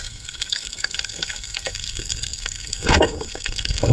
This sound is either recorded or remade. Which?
remade